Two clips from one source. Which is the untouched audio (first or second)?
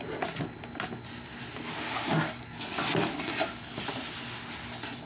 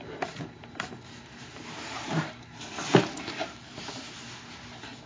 first